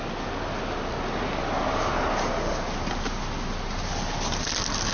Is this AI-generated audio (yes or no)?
no